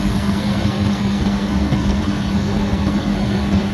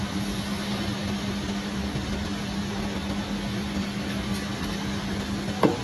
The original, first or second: second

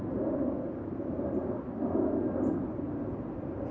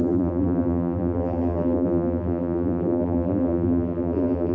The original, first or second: first